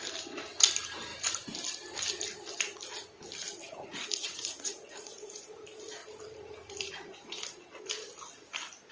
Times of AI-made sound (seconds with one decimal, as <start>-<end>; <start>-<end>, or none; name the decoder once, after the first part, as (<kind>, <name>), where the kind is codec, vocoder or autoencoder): 3.6-5.4 (vocoder, Vocos)